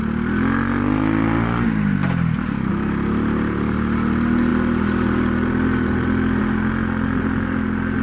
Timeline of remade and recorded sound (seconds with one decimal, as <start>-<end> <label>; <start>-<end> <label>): 0.0-8.0 recorded